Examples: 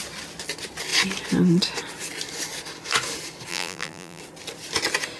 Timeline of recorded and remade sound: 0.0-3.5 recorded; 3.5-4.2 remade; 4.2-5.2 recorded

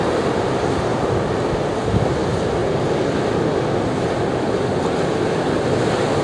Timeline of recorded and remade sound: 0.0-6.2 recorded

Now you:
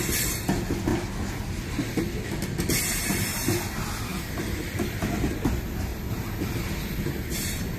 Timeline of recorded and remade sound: 0.0-4.1 recorded; 4.1-4.8 remade; 4.8-5.9 recorded; 5.9-6.6 remade; 6.6-7.8 recorded